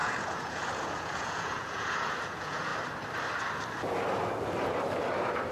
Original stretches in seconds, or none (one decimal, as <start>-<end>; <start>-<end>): 2.7-5.5